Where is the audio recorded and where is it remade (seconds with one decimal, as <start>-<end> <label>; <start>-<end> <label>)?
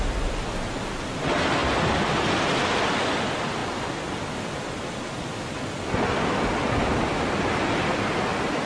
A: 0.0-8.7 recorded